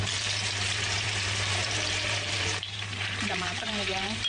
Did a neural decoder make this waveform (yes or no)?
yes